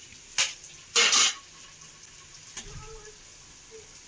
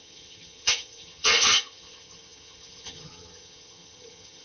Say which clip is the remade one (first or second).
second